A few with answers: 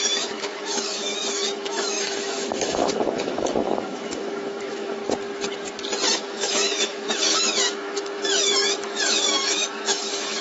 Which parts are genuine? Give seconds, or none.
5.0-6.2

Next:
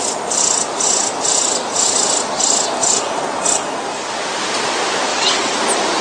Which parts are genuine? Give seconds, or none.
0.0-5.1; 5.6-6.0

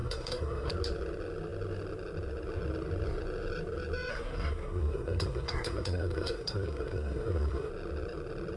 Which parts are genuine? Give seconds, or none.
0.7-4.1; 7.7-8.6

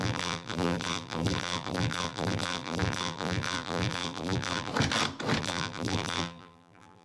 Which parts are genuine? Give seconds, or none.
4.7-5.4

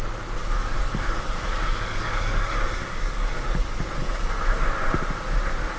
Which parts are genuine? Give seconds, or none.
0.0-0.4; 3.4-4.0; 4.6-5.8

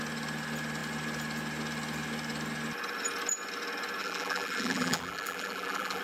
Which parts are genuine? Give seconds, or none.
0.0-4.0

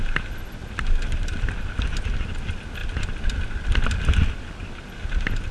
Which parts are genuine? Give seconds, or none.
0.0-5.5

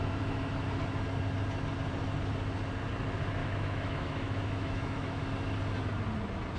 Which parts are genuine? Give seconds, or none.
0.0-3.4; 5.3-6.6